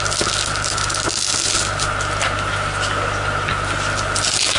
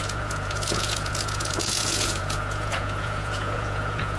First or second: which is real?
first